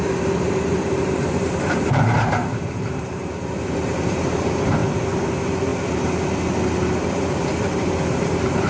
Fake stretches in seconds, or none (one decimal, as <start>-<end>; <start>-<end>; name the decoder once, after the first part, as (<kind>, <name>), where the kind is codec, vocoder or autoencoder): 0.0-4.8 (vocoder, BigVGAN v2); 5.3-5.7; 7.1-8.7